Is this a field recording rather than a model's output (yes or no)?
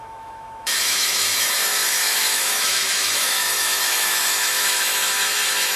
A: no